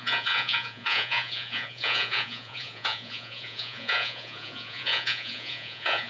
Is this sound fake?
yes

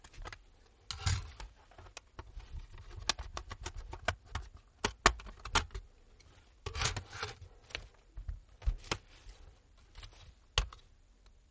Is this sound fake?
no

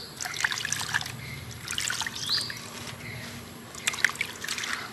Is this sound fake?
no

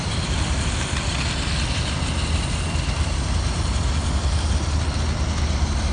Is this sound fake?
no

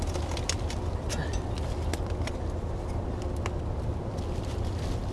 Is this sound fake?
no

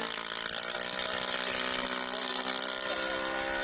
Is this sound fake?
no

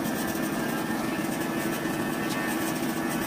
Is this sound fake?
no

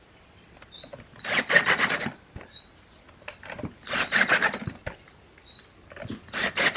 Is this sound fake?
no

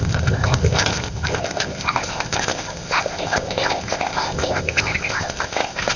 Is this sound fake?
yes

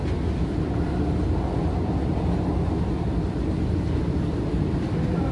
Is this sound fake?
no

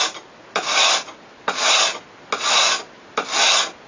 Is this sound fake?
no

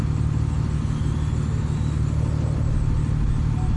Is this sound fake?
no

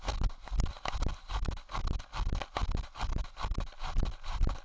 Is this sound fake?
no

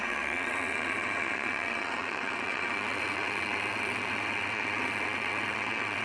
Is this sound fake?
yes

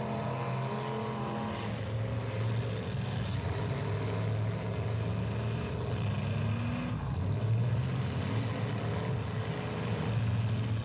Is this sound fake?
no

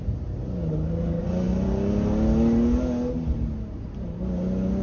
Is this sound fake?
no